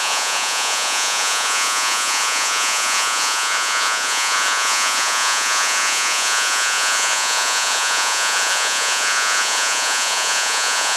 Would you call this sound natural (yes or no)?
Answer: no